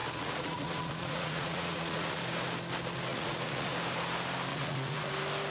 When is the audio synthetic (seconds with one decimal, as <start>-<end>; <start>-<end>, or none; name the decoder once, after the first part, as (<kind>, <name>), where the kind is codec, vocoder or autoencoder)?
0.0-2.2 (vocoder, Vocos); 3.1-3.7; 4.5-5.1